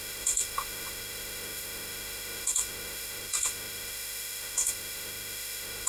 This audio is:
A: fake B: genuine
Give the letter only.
A